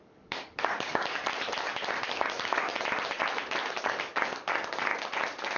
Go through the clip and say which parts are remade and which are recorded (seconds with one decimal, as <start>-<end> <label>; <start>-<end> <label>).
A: 0.0-1.2 remade; 1.2-2.1 recorded; 2.1-2.7 remade; 2.7-3.8 recorded; 3.8-4.9 remade; 4.9-5.6 recorded